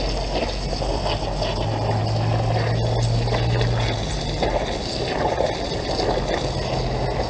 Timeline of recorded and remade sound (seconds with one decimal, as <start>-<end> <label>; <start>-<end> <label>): 0.0-7.3 recorded